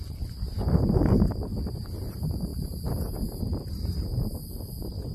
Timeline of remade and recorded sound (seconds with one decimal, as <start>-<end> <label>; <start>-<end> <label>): 0.0-1.5 remade; 1.5-2.1 recorded; 2.1-4.4 remade; 4.4-5.1 recorded